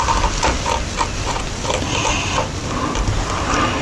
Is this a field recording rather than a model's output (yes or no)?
yes